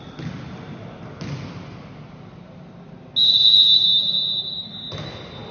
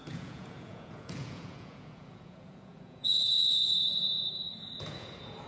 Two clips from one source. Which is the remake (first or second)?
second